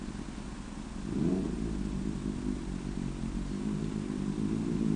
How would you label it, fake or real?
real